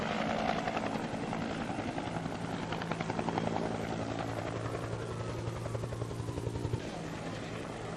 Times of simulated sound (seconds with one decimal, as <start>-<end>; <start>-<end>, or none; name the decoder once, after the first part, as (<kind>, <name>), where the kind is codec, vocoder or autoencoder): none